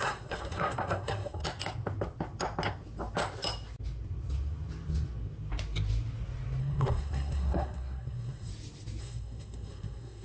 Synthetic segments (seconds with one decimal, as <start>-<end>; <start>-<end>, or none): 0.0-1.4; 6.6-8.5; 9.0-10.2